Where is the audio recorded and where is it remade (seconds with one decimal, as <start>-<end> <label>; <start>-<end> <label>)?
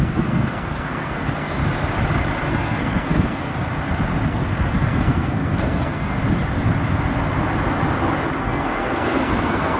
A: 0.0-1.6 remade; 1.6-2.5 recorded; 2.5-3.5 remade; 3.5-4.3 recorded; 4.3-6.2 remade; 6.2-8.4 recorded; 8.4-9.8 remade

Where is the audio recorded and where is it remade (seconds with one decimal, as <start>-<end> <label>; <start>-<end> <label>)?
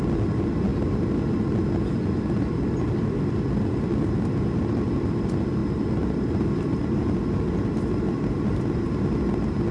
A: 0.0-5.6 recorded; 5.6-6.8 remade; 6.8-9.7 recorded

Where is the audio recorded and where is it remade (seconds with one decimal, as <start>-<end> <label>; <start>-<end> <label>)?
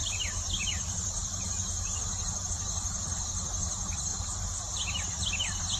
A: 0.0-5.8 recorded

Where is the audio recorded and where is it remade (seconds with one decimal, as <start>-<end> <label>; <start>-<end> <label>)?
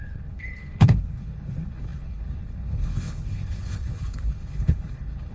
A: 0.0-5.3 remade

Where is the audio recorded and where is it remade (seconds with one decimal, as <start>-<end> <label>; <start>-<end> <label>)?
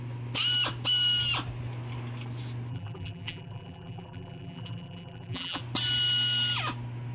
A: 0.0-2.7 recorded; 2.7-5.6 remade; 5.6-7.1 recorded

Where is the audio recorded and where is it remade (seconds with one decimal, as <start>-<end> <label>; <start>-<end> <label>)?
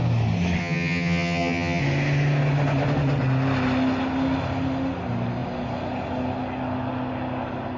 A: 0.0-0.6 recorded; 0.6-1.8 remade; 1.8-7.8 recorded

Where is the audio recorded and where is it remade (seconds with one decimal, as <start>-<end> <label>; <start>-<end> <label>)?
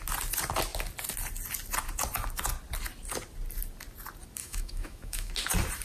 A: 0.0-4.4 recorded; 4.4-5.3 remade; 5.3-5.8 recorded